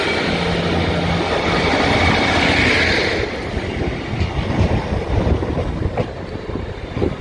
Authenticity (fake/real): real